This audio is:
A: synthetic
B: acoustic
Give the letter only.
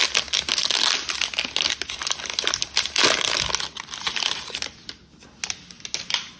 B